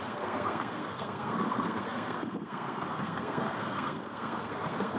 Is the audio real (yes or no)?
no